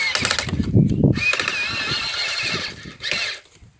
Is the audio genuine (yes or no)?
yes